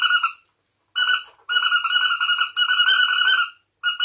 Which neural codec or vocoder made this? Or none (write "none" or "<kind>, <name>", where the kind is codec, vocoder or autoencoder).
none